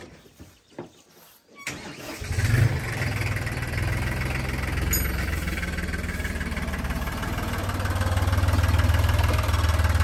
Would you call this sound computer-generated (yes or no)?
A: no